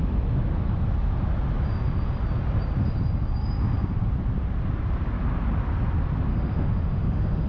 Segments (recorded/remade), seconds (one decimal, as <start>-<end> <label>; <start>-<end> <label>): 0.0-6.3 recorded; 6.3-7.5 remade

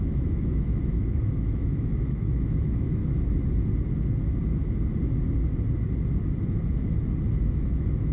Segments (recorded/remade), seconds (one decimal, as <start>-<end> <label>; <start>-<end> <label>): 0.0-3.0 remade; 3.0-7.5 recorded; 7.5-8.1 remade

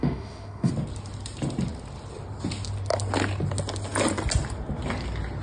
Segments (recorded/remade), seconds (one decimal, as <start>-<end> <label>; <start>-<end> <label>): 0.0-0.7 remade; 0.7-5.4 recorded

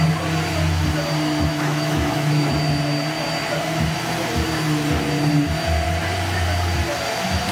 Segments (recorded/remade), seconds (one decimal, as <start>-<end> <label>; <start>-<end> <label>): 0.0-1.5 recorded; 1.5-2.5 remade; 2.5-7.5 recorded

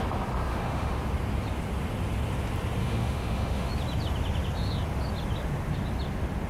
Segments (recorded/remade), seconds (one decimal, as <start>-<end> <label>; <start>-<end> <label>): 0.0-0.5 recorded; 0.5-1.0 remade; 1.0-2.8 recorded; 2.8-3.7 remade; 3.7-6.5 recorded